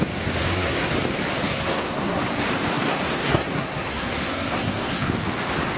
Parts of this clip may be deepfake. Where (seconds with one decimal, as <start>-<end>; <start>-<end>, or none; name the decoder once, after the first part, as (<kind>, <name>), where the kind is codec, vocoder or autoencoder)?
0.4-0.9 (codec, SNAC); 1.5-2.2; 2.7-5.1